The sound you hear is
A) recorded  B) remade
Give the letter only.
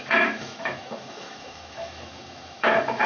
B